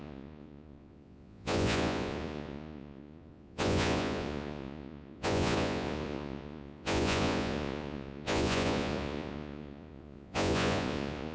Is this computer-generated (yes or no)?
yes